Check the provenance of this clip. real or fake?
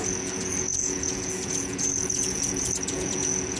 fake